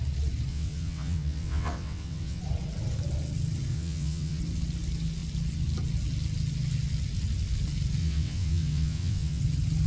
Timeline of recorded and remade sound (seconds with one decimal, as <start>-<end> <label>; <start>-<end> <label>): 0.0-0.5 recorded; 0.5-2.4 remade; 2.4-3.7 recorded; 3.7-4.4 remade; 4.4-8.0 recorded; 8.0-9.4 remade; 9.4-9.9 recorded